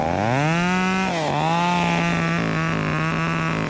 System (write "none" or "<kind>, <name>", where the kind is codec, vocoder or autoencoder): none